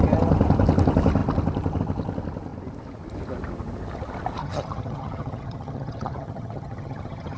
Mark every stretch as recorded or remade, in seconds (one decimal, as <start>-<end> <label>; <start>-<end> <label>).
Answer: 0.0-4.4 recorded; 4.4-7.4 remade